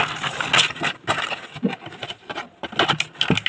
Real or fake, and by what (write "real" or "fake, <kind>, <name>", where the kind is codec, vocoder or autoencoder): real